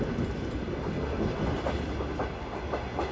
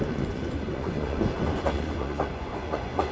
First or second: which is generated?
second